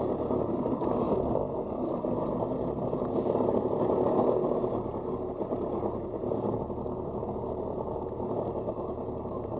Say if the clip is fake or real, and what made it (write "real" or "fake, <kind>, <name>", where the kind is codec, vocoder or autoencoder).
real